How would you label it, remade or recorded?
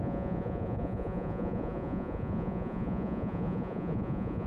remade